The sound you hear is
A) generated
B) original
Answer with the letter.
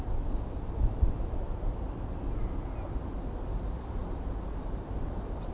B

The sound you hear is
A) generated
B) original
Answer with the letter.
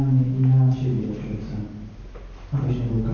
B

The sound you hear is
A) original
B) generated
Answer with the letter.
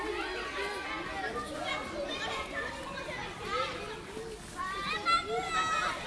A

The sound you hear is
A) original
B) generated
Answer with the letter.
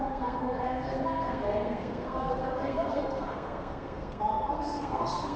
B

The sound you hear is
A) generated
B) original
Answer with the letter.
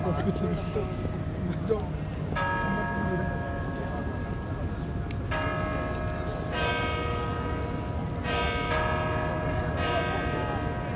B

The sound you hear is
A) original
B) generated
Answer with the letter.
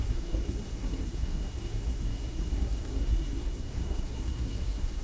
B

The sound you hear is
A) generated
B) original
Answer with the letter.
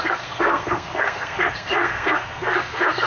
A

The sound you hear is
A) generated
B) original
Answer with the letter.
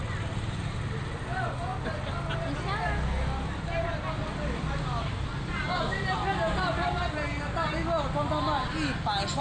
B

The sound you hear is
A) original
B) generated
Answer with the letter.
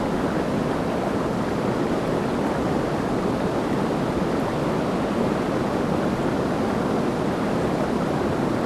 A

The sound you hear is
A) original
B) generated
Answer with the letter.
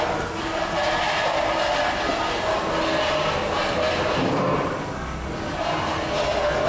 A